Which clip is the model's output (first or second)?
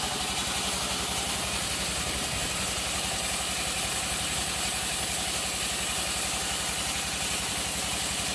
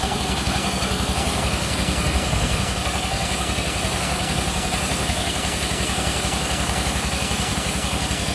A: second